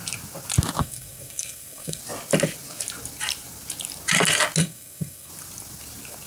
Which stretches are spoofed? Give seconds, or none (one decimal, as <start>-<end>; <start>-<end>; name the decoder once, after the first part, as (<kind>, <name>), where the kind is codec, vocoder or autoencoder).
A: 0.8-2.0 (codec, SNAC); 4.6-5.3

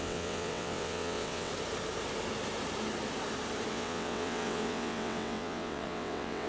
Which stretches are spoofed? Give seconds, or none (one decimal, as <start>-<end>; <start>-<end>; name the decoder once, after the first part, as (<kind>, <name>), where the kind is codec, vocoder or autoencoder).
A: 0.0-1.5 (vocoder, WaveNeXt); 3.7-6.5